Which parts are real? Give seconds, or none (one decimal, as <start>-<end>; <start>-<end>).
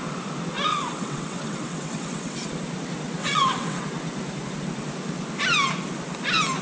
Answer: 0.0-0.7; 2.5-3.2; 3.8-6.6